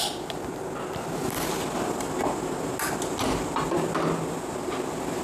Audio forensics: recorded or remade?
recorded